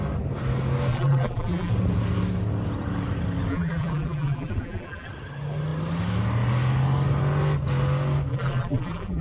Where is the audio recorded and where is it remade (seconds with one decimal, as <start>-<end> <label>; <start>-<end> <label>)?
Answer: 0.0-0.9 recorded; 0.9-1.7 remade; 1.7-3.5 recorded; 3.5-5.1 remade; 5.1-8.3 recorded; 8.3-9.2 remade